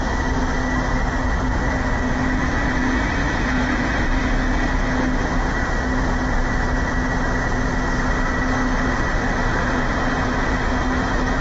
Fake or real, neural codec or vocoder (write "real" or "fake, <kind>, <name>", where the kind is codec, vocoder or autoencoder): real